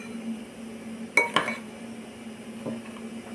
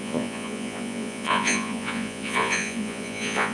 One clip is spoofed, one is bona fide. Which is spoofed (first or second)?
second